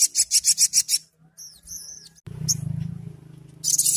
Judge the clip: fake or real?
real